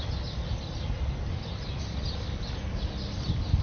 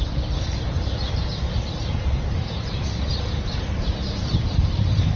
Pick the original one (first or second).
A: first